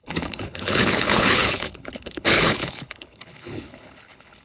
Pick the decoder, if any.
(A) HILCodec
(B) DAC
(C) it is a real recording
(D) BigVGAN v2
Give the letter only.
A